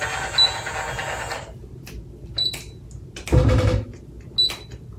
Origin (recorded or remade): recorded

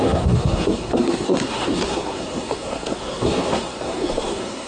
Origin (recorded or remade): remade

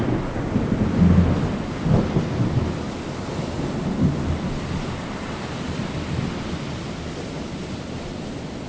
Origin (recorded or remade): recorded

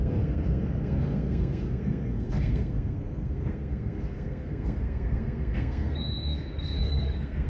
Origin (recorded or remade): remade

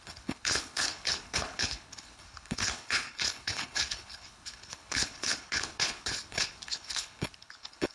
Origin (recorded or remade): remade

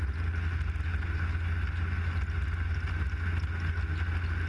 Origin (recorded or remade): recorded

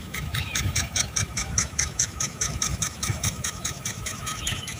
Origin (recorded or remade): remade